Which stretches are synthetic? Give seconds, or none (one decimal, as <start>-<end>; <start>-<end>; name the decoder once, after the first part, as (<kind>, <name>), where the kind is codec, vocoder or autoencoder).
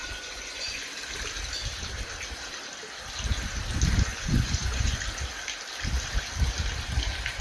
0.0-0.9 (vocoder, Vocos); 4.1-5.0